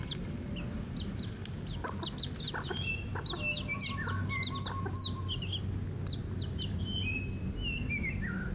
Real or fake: real